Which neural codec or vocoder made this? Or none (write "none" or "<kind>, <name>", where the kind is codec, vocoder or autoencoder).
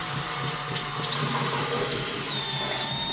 none